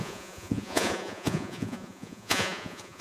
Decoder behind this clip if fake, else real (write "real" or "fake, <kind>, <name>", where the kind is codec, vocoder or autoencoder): fake, vocoder, Vocos